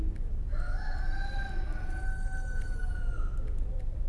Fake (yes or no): no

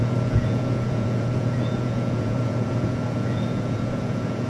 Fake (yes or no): yes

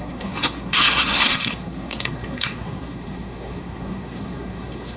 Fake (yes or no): yes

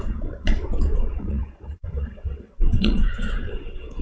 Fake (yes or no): yes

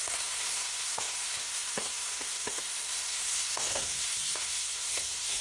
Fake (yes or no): yes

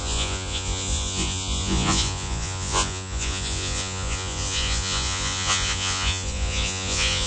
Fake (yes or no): yes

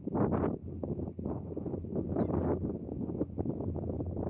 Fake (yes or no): no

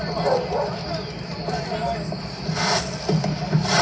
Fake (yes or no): no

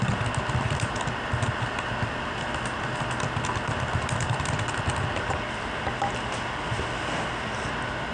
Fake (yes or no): no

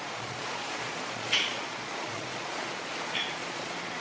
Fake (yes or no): yes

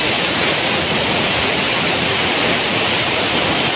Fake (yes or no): yes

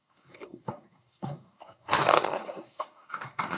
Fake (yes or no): yes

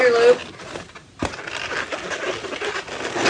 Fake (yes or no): no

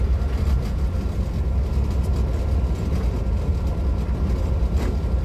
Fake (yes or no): no